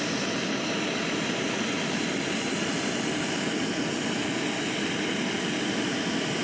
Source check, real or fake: real